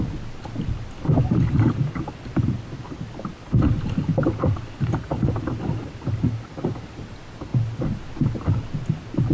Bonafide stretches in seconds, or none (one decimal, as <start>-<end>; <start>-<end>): 0.0-9.3